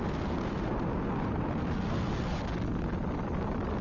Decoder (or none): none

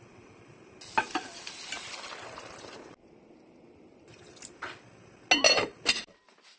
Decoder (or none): none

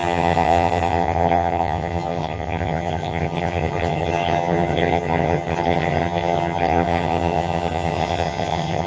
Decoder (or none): vocoder, HiFi-GAN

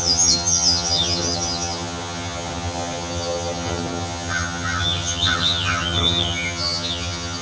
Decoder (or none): vocoder, HiFi-GAN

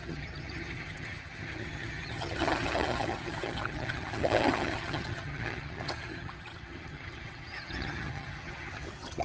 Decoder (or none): vocoder, HiFi-GAN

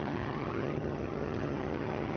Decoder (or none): vocoder, HiFi-GAN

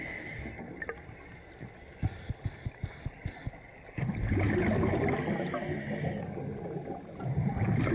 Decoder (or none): none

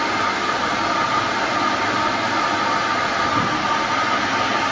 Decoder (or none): none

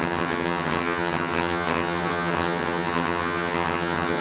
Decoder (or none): vocoder, HiFi-GAN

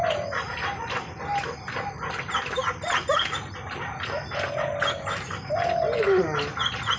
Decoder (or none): none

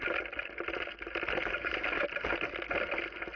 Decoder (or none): none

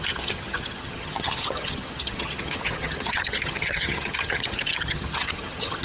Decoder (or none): vocoder, HiFi-GAN